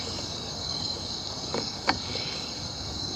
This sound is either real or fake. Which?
fake